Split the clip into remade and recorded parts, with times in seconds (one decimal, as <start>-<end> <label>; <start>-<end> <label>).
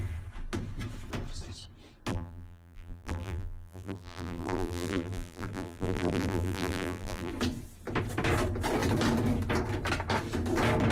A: 0.0-2.1 recorded; 2.1-7.3 remade; 7.3-10.9 recorded